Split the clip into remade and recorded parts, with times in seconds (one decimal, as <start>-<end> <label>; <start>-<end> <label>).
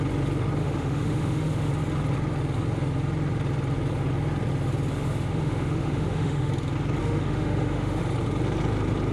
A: 0.0-0.6 recorded; 0.6-1.7 remade; 1.7-4.9 recorded; 4.9-6.5 remade; 6.5-7.0 recorded; 7.0-8.0 remade; 8.0-9.1 recorded